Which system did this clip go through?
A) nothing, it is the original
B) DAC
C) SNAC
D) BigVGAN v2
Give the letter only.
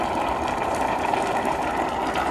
A